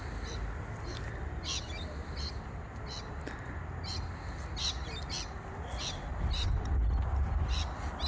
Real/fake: real